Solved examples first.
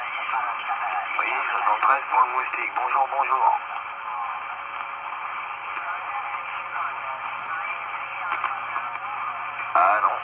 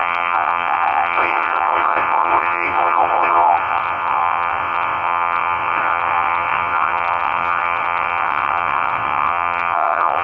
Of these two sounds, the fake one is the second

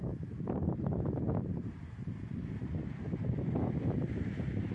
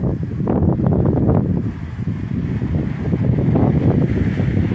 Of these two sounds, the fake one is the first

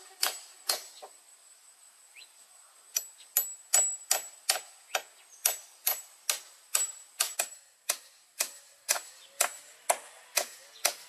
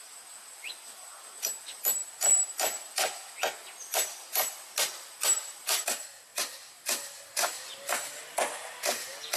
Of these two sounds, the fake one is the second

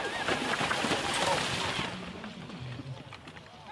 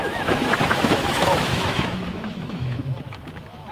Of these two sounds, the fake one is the second